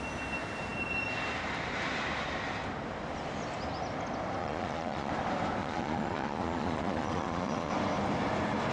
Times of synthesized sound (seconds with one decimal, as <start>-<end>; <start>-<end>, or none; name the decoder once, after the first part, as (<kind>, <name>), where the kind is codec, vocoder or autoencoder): 4.4-5.1 (vocoder, Vocos); 5.6-7.7